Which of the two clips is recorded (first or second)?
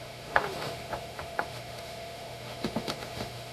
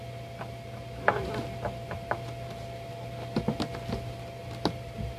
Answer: second